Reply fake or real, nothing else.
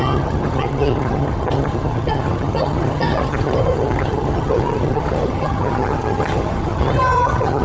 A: fake